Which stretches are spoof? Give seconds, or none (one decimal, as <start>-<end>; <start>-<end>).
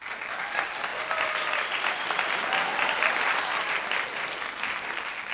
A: 0.9-3.6